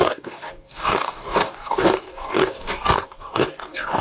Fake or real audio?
fake